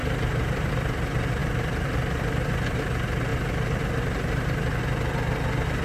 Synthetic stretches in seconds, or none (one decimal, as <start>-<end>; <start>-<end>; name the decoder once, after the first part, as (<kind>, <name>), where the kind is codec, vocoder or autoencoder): 0.0-0.7 (vocoder, BigVGAN v2); 1.4-2.8